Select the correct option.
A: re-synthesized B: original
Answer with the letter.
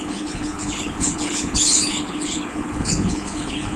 A